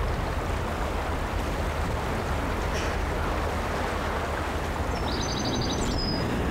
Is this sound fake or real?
real